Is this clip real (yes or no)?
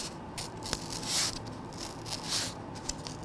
yes